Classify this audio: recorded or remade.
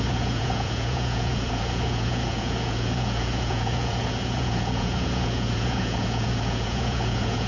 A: remade